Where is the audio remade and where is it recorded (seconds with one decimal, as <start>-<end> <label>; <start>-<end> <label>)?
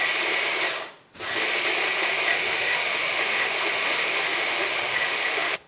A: 0.0-2.3 recorded; 2.3-5.7 remade